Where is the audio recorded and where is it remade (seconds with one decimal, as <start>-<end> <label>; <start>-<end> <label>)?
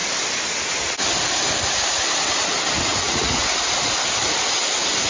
0.0-2.9 recorded; 2.9-3.5 remade; 3.5-5.1 recorded